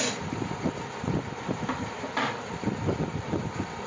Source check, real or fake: fake